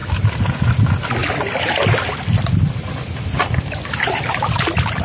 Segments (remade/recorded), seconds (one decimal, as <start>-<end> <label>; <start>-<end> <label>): 0.0-1.2 recorded; 1.2-4.2 remade; 4.2-5.0 recorded